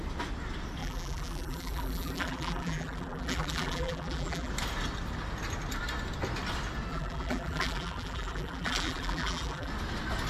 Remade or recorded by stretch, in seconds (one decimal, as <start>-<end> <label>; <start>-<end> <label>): 0.0-0.8 recorded; 0.8-4.5 remade; 4.5-6.9 recorded; 6.9-9.7 remade; 9.7-10.3 recorded